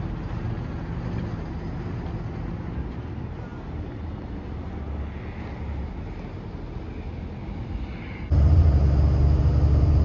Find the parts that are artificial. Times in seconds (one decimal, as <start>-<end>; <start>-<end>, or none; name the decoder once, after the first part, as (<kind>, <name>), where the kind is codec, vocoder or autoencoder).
none